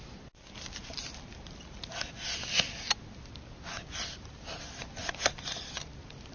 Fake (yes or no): no